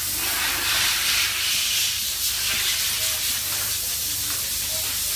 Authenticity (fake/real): real